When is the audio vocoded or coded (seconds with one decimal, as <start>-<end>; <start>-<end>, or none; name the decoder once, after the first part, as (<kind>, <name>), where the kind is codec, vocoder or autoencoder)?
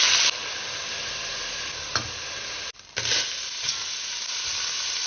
none